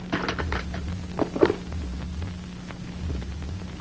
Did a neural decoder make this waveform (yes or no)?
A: no